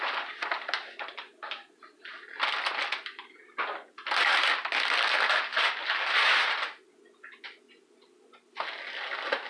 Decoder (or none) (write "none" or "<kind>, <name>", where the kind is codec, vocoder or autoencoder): none